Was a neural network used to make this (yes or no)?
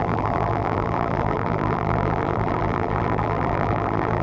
yes